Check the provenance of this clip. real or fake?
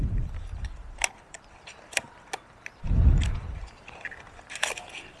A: real